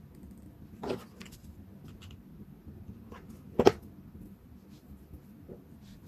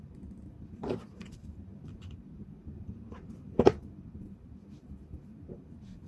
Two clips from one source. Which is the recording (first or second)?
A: first